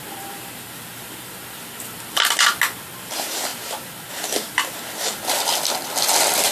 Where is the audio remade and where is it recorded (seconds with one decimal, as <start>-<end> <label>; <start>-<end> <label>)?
0.0-0.9 recorded; 0.9-2.1 remade; 2.1-6.5 recorded